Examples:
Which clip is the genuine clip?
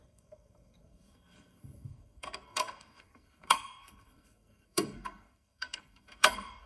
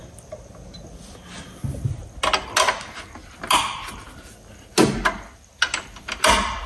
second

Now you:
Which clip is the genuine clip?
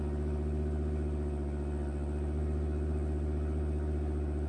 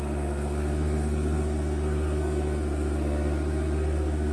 first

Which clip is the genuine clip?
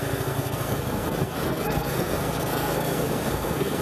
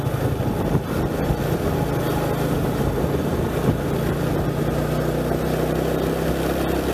second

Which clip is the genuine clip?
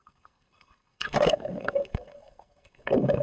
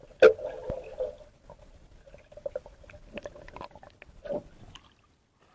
second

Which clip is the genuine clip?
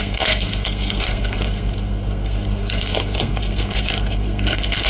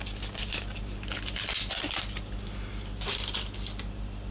second